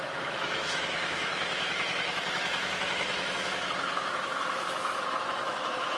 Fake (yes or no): yes